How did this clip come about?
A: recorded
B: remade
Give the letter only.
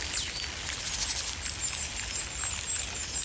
A